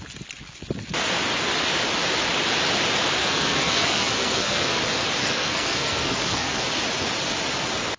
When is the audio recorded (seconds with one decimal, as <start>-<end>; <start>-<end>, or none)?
0.0-3.2; 4.8-5.2; 6.6-8.0